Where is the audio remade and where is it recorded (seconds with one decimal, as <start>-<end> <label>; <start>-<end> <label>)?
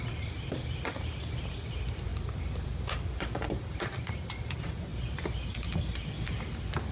0.0-4.9 remade; 4.9-5.8 recorded; 5.8-6.9 remade